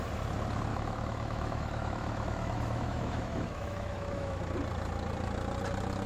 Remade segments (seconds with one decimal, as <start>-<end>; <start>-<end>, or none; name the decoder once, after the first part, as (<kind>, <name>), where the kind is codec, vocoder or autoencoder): 0.7-4.4 (autoencoder, DAC-VAE)